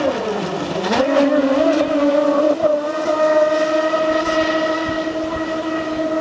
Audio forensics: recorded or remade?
recorded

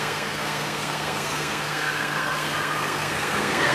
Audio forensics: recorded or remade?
remade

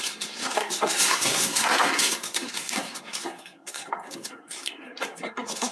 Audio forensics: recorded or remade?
remade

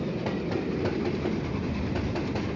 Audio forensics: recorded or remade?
recorded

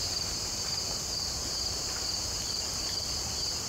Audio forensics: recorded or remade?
recorded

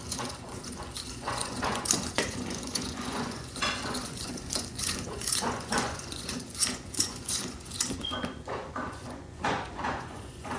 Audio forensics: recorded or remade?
remade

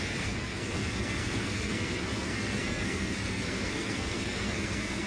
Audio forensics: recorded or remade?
remade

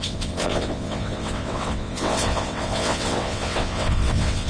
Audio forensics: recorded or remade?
remade